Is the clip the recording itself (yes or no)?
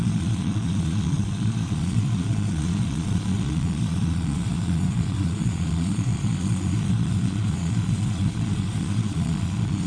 no